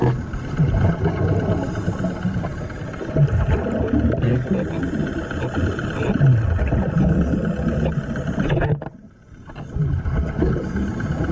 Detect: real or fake real